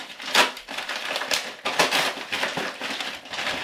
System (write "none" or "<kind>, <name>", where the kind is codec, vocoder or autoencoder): none